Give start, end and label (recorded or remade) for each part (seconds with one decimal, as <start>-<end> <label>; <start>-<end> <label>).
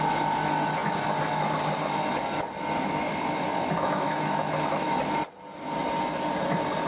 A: 0.0-3.1 recorded; 3.1-4.9 remade; 4.9-6.9 recorded